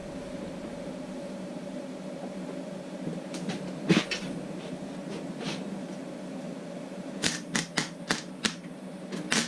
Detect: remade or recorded remade